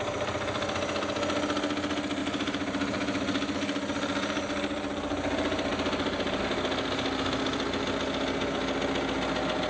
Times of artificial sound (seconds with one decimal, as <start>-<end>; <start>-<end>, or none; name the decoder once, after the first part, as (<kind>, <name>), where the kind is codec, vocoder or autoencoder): 2.2-6.4 (vocoder, BigVGAN v2)